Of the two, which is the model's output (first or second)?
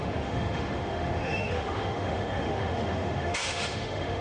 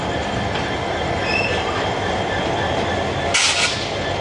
first